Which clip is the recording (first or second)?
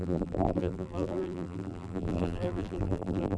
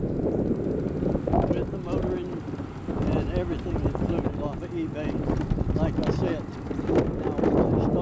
second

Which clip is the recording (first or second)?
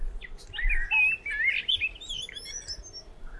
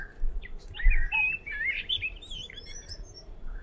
first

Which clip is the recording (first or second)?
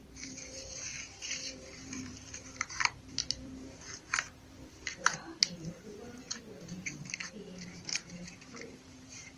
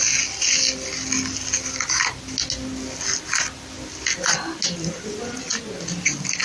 second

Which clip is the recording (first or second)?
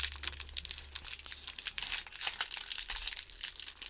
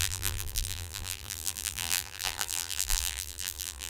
first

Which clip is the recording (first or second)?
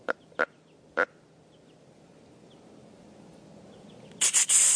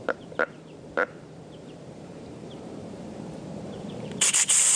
first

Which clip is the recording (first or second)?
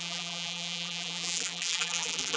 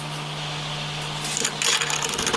second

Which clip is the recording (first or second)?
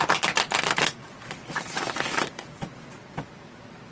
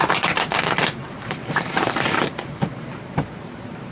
first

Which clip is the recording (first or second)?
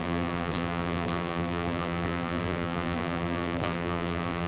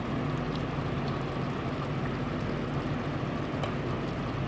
second